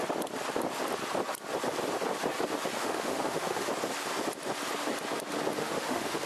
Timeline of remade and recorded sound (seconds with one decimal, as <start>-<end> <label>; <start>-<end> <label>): 0.0-2.8 recorded; 2.8-3.7 remade; 3.7-5.6 recorded; 5.6-6.3 remade